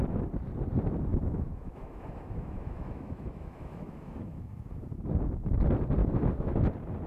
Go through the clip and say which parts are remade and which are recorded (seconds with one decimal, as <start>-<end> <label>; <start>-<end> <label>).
0.0-1.1 recorded; 1.1-4.5 remade; 4.5-6.0 recorded; 6.0-6.6 remade; 6.6-7.1 recorded